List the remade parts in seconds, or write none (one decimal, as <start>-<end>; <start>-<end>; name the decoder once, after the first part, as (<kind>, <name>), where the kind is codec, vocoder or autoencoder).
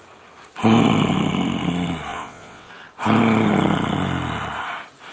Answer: 2.1-2.7 (vocoder, WaveNeXt)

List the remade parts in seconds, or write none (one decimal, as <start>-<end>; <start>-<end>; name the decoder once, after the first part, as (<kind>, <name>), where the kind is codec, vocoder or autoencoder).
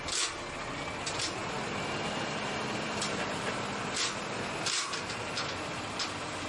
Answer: 1.4-4.4 (vocoder, BigVGAN v2)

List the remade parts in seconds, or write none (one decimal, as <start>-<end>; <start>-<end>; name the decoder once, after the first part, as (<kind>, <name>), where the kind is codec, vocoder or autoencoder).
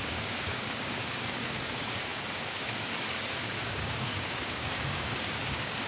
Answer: 0.0-5.9 (codec, DAC)